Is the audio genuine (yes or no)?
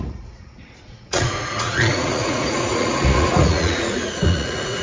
no